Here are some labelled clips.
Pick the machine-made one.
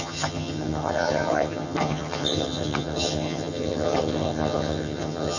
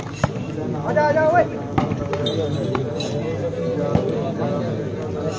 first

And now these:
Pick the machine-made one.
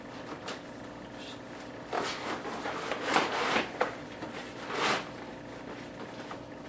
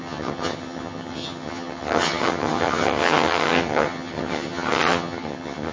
second